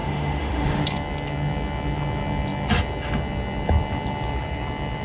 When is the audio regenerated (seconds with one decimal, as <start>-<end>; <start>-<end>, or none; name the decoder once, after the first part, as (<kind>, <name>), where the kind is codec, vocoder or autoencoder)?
0.0-0.8 (autoencoder, DAC-VAE)